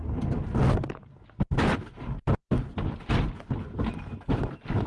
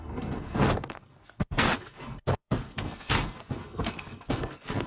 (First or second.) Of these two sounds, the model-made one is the second